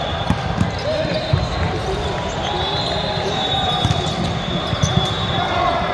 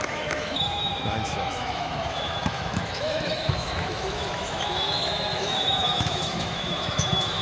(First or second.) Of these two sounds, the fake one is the second